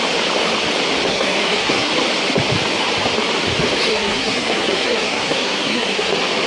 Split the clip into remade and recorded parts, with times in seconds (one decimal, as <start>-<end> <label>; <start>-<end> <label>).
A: 0.0-1.1 recorded; 1.1-1.9 remade; 1.9-3.9 recorded; 3.9-6.1 remade; 6.1-6.5 recorded